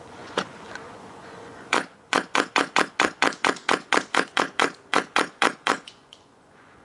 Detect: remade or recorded remade